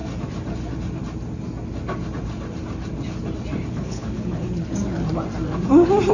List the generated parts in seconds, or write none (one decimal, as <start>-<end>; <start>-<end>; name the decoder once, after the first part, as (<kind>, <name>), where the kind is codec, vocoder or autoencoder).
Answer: 3.7-4.7 (codec, HILCodec)